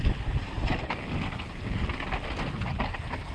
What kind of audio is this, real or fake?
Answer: real